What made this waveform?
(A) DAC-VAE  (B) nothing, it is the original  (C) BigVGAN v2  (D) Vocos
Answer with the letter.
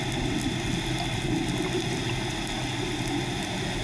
B